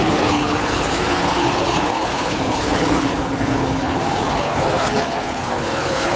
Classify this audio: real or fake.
fake